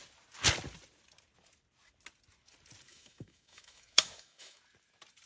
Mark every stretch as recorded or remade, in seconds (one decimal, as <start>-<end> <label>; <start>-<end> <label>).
0.0-2.9 recorded; 2.9-4.6 remade; 4.6-5.3 recorded